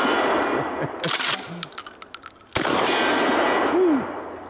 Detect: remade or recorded recorded